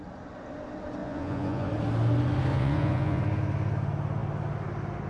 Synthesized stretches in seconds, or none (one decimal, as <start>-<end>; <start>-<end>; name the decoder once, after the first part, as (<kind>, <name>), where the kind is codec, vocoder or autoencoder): 1.0-1.7 (vocoder, Vocos); 2.5-3.2